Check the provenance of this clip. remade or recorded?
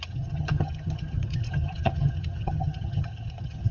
remade